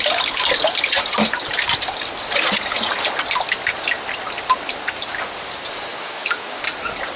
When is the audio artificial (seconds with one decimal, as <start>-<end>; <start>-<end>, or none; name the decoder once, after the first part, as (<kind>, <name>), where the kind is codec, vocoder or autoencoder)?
5.9-6.6 (autoencoder, DAC-VAE)